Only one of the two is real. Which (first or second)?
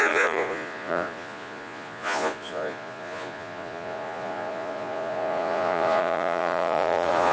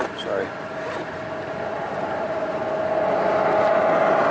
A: second